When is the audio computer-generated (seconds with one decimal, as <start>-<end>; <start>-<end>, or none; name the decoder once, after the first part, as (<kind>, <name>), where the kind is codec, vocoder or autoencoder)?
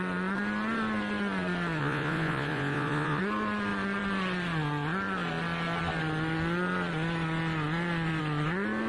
1.8-3.2 (vocoder, Vocos)